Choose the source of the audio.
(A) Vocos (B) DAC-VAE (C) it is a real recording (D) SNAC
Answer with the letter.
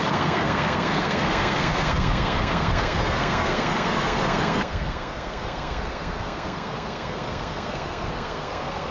D